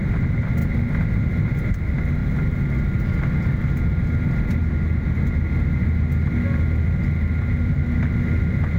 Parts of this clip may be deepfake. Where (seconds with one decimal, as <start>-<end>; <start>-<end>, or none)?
none